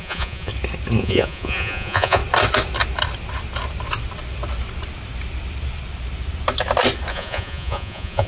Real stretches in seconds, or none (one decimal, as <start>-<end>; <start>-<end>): 0.5-1.0; 2.2-7.1